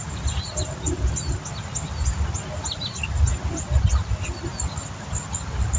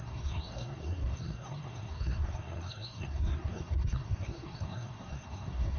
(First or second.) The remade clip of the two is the second